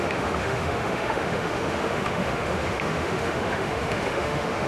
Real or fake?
fake